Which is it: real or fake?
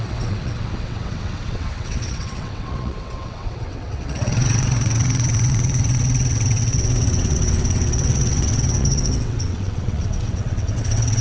fake